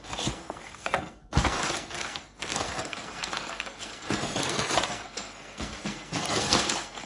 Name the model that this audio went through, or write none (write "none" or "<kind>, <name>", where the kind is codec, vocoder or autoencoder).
codec, SNAC